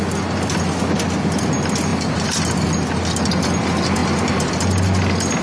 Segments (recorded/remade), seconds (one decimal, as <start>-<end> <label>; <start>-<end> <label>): 0.0-5.4 recorded